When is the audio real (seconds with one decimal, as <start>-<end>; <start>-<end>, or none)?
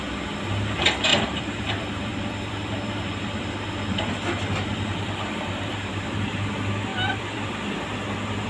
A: 0.0-1.1; 3.5-4.7; 6.5-6.9; 7.8-8.5